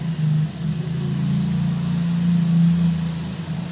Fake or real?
real